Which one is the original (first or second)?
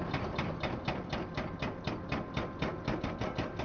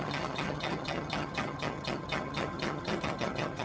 first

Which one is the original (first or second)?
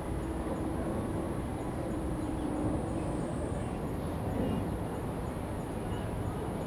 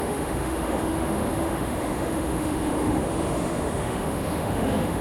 first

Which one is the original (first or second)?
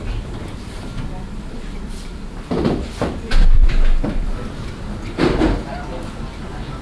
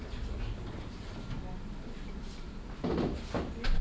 second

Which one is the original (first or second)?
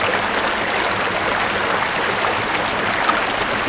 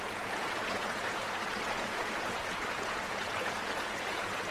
first